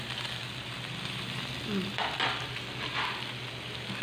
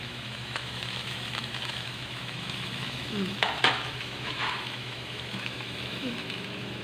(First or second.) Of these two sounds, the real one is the first